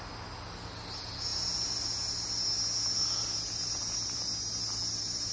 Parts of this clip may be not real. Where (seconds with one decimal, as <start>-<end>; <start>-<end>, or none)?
none